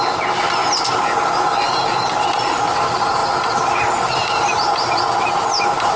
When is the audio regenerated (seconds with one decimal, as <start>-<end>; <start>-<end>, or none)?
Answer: none